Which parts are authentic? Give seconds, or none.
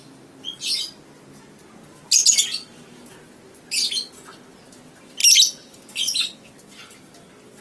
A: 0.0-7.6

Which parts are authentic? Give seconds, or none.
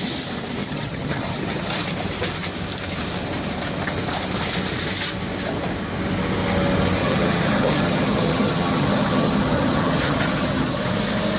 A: 0.0-0.6; 1.7-7.0; 10.8-11.4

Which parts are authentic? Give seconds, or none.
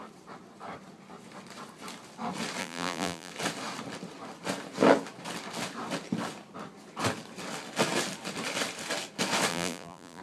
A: 0.0-2.6; 3.3-9.5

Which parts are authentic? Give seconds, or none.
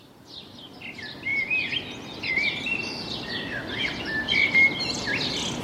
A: 0.0-5.6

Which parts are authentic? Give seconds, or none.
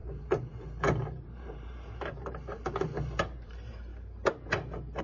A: 3.9-5.0